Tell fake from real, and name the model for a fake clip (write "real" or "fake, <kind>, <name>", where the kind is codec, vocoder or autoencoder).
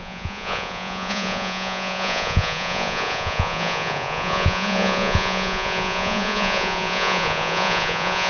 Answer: fake, vocoder, Vocos